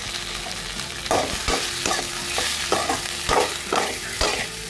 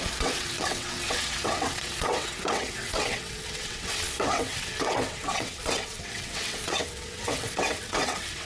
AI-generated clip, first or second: second